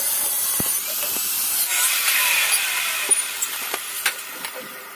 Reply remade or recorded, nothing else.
recorded